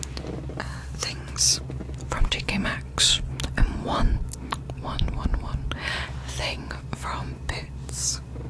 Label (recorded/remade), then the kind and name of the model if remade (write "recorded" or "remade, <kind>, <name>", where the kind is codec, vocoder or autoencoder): recorded